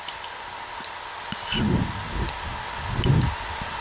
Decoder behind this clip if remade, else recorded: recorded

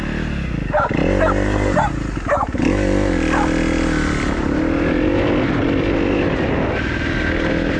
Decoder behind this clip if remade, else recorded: recorded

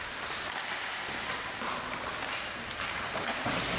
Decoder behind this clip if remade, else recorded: recorded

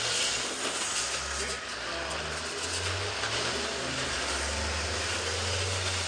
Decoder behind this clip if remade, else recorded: recorded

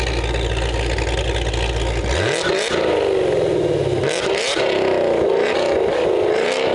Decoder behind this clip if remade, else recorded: recorded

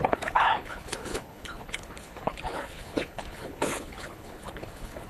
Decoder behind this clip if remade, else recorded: remade, codec, HILCodec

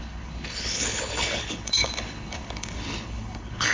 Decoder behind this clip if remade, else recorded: remade, codec, HILCodec